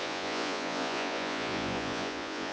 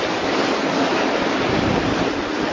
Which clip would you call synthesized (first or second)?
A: first